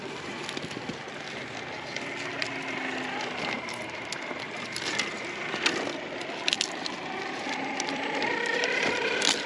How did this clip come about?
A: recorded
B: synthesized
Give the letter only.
A